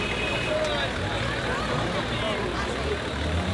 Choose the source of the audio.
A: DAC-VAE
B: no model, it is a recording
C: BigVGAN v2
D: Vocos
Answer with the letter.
B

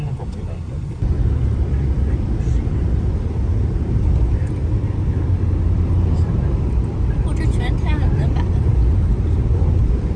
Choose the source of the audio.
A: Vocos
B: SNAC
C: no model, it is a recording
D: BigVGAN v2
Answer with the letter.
D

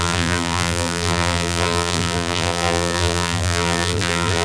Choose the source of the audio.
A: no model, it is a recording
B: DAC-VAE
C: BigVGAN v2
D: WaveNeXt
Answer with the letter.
C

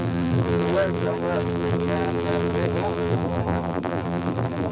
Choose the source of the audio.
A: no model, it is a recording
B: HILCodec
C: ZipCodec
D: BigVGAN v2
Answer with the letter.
D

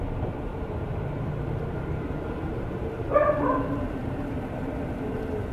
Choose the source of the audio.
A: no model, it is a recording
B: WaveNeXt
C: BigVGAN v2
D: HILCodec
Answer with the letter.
C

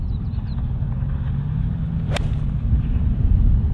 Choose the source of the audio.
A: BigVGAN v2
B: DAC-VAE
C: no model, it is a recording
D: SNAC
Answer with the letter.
A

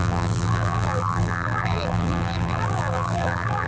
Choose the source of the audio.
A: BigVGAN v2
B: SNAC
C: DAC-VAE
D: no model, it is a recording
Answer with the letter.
A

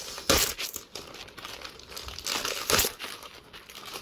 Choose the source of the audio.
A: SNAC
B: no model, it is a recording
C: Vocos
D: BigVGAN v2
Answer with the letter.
B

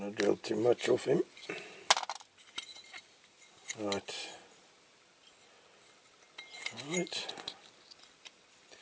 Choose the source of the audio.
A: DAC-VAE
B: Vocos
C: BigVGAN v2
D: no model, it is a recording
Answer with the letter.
D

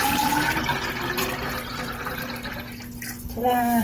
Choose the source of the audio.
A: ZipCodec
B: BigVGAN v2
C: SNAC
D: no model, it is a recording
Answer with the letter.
D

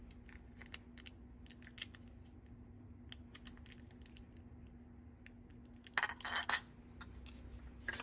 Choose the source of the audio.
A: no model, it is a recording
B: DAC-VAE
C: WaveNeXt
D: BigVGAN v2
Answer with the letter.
A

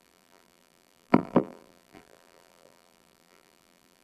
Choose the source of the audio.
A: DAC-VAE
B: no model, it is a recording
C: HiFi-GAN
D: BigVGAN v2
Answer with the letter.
D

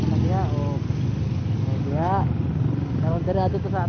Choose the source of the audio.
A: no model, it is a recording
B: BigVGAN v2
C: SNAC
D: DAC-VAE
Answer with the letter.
A